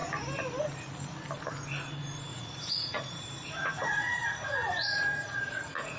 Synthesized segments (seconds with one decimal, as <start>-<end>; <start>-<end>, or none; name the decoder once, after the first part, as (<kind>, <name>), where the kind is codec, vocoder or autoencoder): 2.3-3.2 (vocoder, Vocos); 3.6-6.0